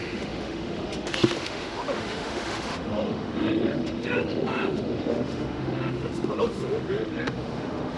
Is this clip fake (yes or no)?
yes